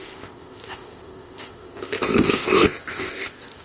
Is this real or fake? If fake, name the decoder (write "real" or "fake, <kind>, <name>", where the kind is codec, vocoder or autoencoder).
fake, codec, ZipCodec